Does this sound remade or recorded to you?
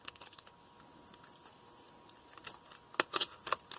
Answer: recorded